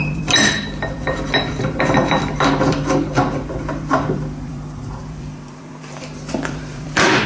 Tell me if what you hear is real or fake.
fake